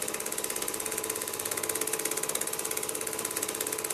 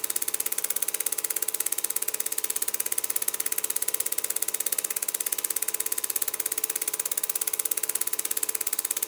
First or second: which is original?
second